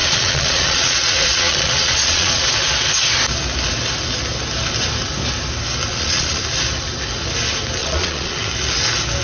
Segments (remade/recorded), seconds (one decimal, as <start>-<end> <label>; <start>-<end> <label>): 0.0-2.4 remade; 2.4-5.9 recorded; 5.9-6.4 remade; 6.4-7.8 recorded; 7.8-8.4 remade; 8.4-9.2 recorded